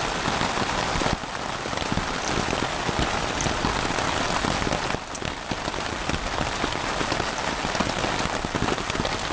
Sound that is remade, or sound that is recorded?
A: recorded